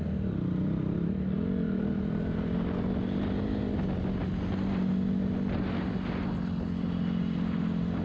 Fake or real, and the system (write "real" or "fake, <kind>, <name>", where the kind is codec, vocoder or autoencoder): real